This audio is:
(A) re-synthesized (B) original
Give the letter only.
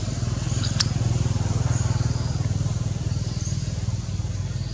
B